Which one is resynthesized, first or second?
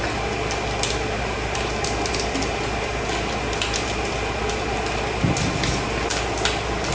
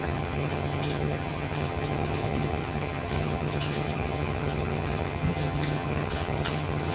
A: second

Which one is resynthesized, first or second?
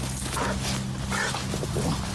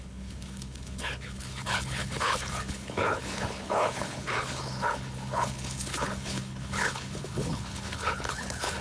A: second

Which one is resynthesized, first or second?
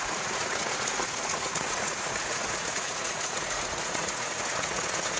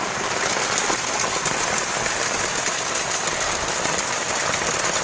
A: first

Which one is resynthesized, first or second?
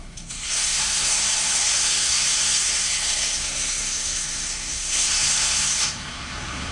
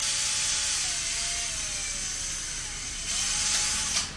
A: first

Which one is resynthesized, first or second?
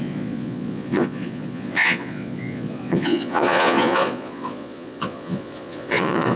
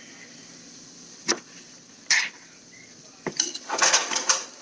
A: first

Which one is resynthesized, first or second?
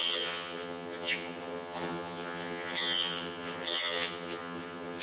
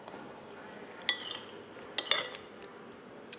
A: first